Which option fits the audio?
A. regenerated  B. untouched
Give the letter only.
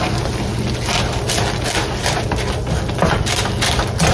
B